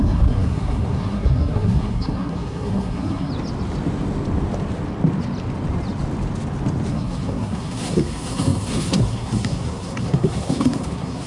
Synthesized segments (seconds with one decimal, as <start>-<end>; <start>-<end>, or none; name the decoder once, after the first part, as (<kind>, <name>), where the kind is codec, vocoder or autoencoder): 0.0-3.3 (codec, SNAC); 6.9-11.3